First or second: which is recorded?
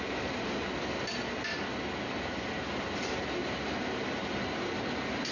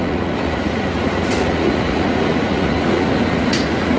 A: first